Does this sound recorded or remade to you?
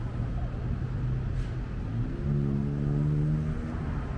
recorded